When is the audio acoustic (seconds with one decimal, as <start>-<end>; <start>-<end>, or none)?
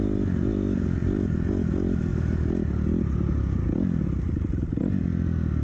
0.0-1.0; 1.5-5.6